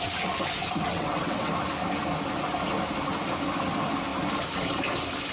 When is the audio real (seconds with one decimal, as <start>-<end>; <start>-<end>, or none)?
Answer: 0.0-0.9; 1.5-5.3